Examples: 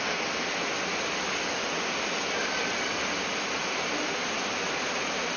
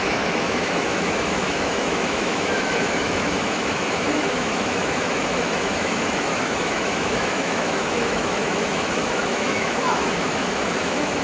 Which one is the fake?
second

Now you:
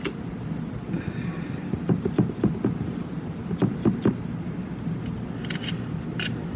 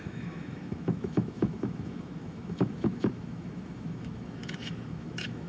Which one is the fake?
second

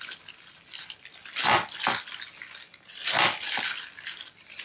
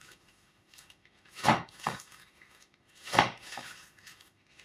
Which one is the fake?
second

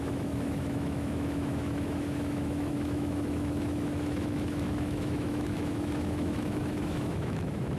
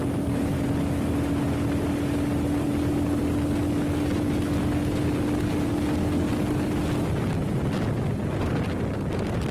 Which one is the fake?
first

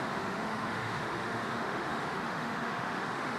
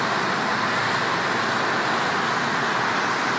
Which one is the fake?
first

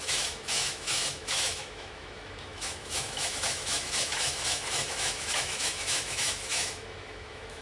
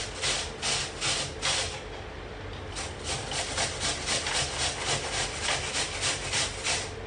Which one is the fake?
first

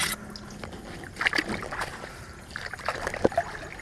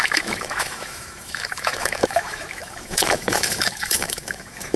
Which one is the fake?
second